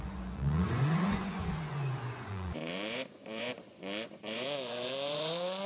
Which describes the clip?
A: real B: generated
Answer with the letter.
B